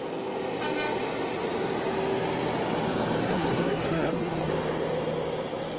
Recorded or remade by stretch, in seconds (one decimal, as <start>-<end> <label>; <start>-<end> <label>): 0.0-3.2 recorded; 3.2-4.5 remade; 4.5-5.8 recorded